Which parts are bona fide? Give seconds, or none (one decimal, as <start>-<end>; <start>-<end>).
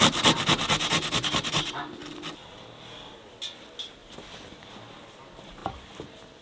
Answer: 0.0-4.0; 4.5-5.6